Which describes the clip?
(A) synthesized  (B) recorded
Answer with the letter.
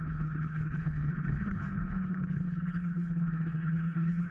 A